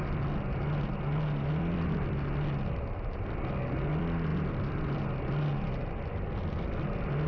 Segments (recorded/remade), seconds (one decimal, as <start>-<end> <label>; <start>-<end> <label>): 0.0-7.3 recorded